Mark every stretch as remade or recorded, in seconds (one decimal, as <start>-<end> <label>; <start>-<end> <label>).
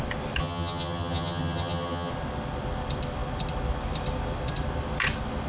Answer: 0.0-0.4 recorded; 0.4-2.1 remade; 2.1-5.5 recorded